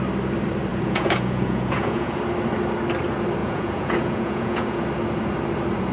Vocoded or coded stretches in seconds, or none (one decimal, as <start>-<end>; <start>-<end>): 0.7-2.2; 3.4-4.8

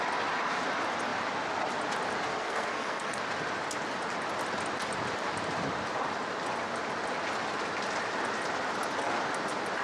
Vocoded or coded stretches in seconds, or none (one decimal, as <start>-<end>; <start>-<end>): 2.3-3.2

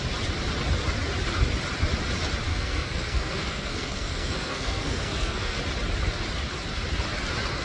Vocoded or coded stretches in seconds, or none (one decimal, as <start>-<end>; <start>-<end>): 2.5-5.6

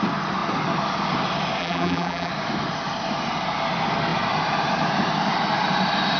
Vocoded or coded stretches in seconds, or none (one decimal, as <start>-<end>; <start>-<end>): 1.6-2.3

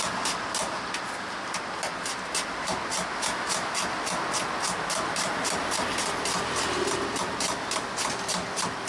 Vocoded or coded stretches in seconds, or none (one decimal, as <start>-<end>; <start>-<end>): 3.1-3.7